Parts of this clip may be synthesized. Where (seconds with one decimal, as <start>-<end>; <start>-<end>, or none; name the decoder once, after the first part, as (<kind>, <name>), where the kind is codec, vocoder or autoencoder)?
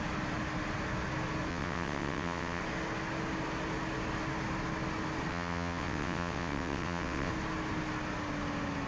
1.5-2.6 (vocoder, WaveNeXt); 5.3-7.3